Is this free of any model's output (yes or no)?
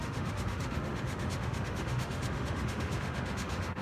no